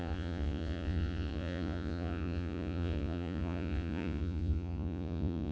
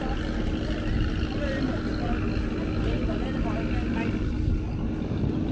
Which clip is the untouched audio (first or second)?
second